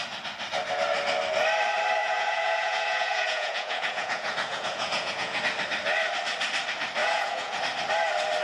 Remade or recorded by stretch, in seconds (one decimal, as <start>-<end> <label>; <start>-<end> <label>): 0.0-2.0 recorded; 2.0-5.4 remade; 5.4-7.0 recorded; 7.0-7.6 remade; 7.6-8.4 recorded

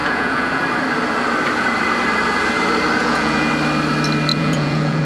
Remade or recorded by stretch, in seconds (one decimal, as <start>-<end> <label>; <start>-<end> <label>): 0.0-0.6 remade; 0.6-3.0 recorded; 3.0-3.5 remade; 3.5-4.3 recorded; 4.3-5.0 remade

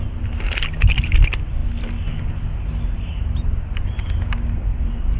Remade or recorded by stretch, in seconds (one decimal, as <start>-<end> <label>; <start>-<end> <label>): 0.0-5.2 recorded

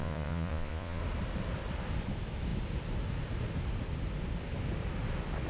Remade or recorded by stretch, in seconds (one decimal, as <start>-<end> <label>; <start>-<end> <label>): 0.0-1.0 remade; 1.0-5.5 recorded

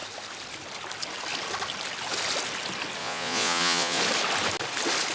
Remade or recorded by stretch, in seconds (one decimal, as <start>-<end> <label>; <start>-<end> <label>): 0.0-3.0 recorded; 3.0-4.0 remade; 4.0-5.1 recorded

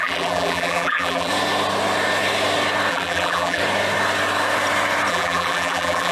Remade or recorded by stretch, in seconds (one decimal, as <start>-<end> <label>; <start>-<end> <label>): 0.0-1.3 remade; 1.3-2.9 recorded; 2.9-3.6 remade; 3.6-5.1 recorded; 5.1-6.1 remade